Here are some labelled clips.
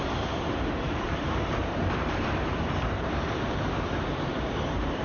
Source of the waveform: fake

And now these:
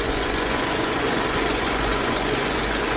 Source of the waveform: fake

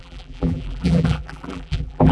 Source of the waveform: fake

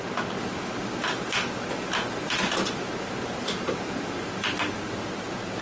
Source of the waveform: real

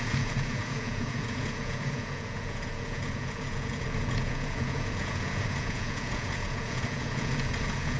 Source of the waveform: fake